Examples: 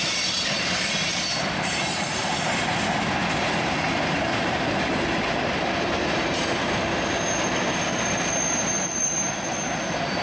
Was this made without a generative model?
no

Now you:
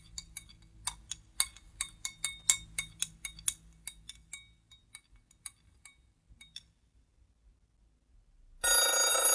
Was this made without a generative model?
yes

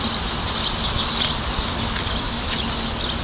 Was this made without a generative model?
yes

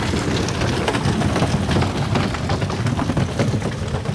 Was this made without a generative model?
yes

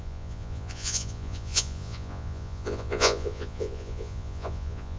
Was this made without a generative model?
no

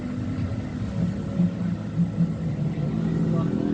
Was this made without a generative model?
yes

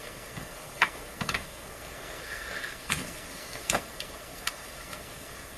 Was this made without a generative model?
no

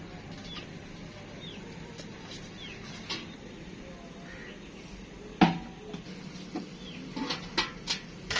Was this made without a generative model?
yes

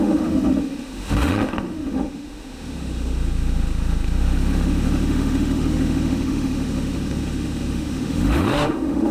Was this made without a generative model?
no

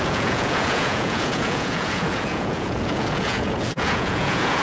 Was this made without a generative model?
no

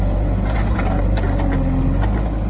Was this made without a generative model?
yes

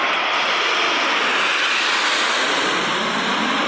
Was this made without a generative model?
yes